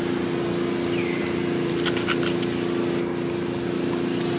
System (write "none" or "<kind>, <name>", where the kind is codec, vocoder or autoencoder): none